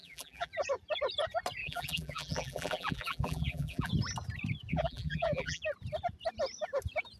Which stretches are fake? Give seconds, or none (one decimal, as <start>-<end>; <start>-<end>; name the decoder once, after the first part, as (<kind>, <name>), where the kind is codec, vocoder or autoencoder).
0.0-0.5 (vocoder, BigVGAN v2); 1.6-3.9; 4.7-5.6